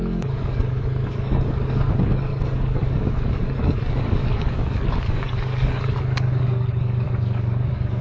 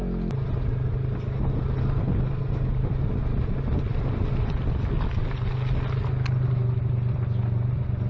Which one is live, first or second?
second